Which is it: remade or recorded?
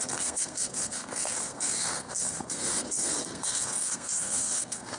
remade